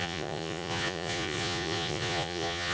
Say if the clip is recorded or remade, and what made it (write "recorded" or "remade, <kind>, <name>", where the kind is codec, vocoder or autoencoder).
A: remade, vocoder, Vocos